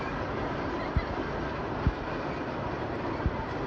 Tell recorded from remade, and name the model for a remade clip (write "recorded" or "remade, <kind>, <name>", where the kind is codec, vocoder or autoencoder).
recorded